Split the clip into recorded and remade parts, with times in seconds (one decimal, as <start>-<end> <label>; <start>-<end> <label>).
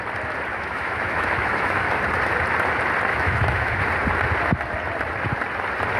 0.0-0.5 recorded; 0.5-2.0 remade; 2.0-3.1 recorded; 3.1-3.8 remade; 3.8-6.0 recorded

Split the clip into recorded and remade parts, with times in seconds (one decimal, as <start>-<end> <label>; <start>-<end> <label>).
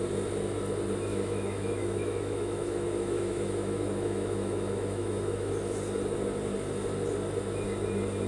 0.0-1.1 recorded; 1.1-5.5 remade; 5.5-8.3 recorded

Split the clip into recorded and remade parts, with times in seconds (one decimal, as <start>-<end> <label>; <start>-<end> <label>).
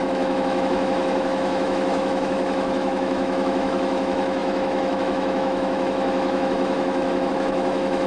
0.0-8.1 remade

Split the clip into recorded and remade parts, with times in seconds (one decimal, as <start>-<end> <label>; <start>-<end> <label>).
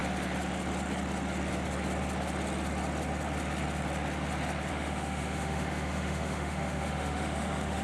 0.0-4.7 recorded; 4.7-7.8 remade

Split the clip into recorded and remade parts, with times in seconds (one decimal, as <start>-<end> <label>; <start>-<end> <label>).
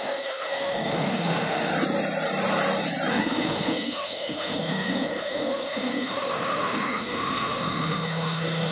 0.0-1.7 remade; 1.7-3.1 recorded; 3.1-8.7 remade